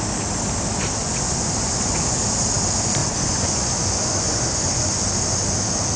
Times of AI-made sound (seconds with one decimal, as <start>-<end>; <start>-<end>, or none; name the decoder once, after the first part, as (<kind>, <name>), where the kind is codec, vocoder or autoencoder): 1.0-2.2 (vocoder, Vocos); 3.0-5.0